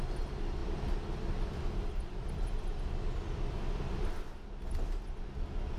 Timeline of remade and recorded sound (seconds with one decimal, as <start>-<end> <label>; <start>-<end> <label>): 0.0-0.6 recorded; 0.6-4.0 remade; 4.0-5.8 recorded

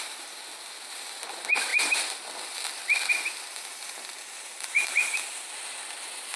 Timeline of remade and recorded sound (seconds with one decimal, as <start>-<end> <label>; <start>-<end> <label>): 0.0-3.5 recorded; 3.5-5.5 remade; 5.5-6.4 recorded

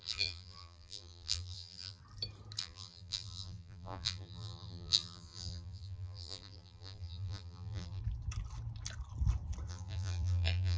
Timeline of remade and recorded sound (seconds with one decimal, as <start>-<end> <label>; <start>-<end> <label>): 0.0-2.0 remade; 2.0-2.6 recorded; 2.6-8.0 remade; 8.0-9.7 recorded; 9.7-10.8 remade